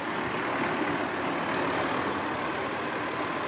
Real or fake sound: real